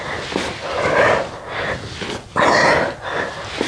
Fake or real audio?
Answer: real